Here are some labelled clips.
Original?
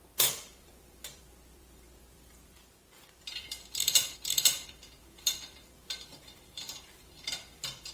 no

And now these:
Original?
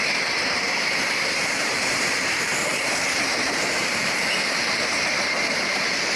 no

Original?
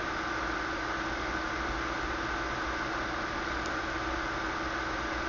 yes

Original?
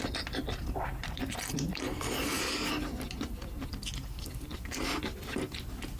yes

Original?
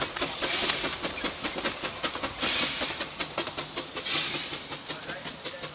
yes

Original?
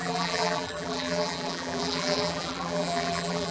no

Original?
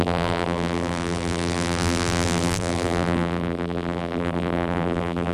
no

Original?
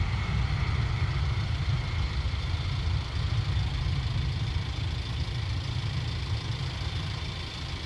yes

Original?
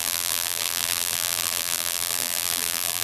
no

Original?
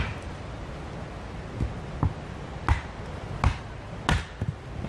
yes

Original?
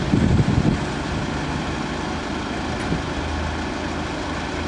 yes